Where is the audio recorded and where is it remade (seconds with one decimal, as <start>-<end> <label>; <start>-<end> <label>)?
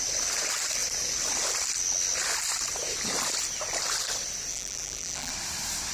0.0-4.5 recorded; 4.5-5.3 remade; 5.3-5.9 recorded